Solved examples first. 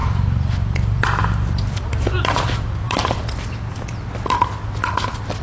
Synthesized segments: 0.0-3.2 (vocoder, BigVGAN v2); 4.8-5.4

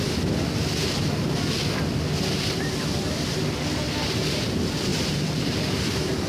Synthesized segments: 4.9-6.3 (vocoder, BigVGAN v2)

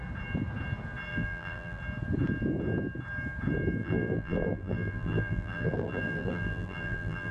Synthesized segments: 1.1-1.8 (vocoder, BigVGAN v2); 3.8-7.3

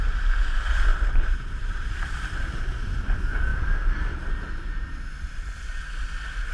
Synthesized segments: 0.9-2.6 (vocoder, BigVGAN v2); 3.5-5.8

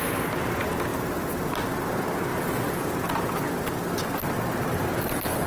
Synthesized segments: 0.9-1.5 (vocoder, BigVGAN v2)

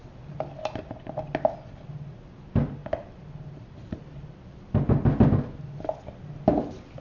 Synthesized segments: none